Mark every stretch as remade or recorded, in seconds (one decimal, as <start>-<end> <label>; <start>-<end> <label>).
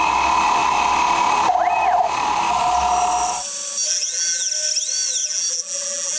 0.0-3.9 recorded; 3.9-4.5 remade; 4.5-5.2 recorded; 5.2-6.2 remade